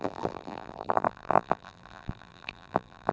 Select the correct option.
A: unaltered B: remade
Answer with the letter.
B